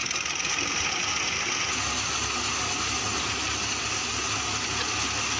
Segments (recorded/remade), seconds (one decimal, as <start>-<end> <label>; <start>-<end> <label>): 0.0-5.4 recorded